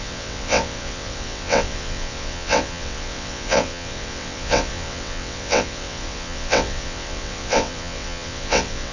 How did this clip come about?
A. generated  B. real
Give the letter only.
A